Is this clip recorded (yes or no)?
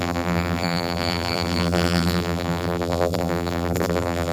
no